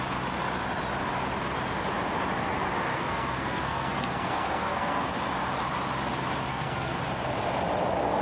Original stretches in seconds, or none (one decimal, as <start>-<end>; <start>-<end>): 0.0-2.9; 5.1-6.5; 7.0-8.2